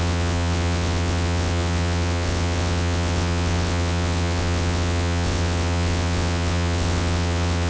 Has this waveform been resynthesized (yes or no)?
yes